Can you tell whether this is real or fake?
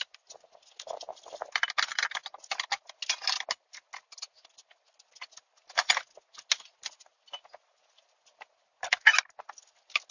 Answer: real